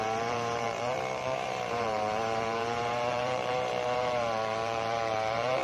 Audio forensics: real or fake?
fake